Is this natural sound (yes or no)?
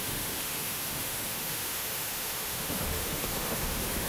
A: no